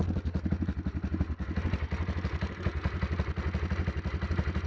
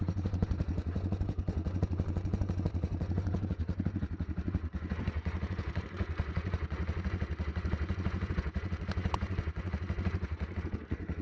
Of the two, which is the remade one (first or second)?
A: second